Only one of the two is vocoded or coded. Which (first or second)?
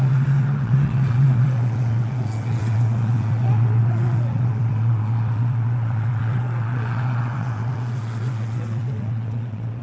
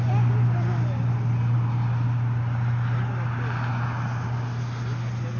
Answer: first